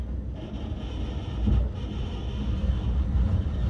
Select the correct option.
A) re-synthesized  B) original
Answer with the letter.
B